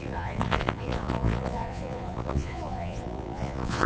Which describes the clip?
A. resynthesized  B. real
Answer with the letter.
A